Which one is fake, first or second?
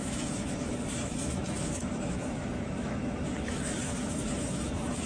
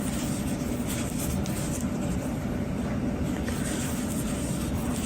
first